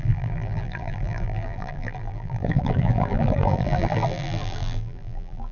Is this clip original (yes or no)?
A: no